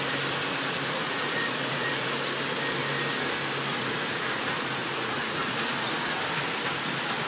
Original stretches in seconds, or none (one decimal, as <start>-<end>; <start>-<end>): 0.0-1.0; 2.1-3.7; 6.2-7.3